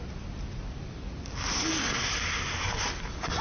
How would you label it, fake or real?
real